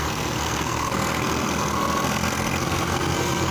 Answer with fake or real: fake